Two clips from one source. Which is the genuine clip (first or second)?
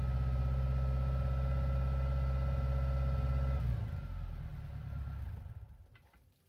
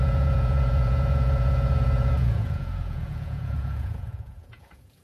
first